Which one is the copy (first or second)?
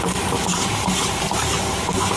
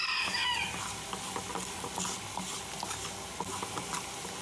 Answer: first